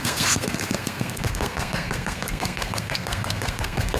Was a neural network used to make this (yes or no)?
yes